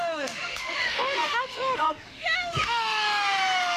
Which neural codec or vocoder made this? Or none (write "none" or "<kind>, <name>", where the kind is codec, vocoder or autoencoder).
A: autoencoder, DAC-VAE